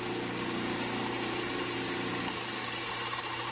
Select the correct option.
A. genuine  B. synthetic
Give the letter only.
A